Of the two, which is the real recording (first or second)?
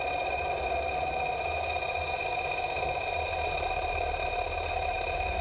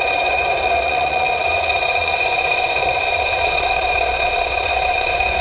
first